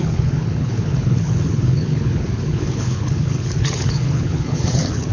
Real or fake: fake